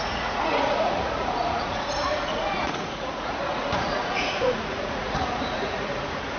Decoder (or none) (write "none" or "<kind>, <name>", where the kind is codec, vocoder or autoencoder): vocoder, Vocos